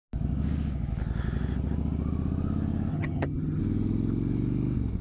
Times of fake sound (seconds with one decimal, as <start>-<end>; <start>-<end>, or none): 2.9-3.6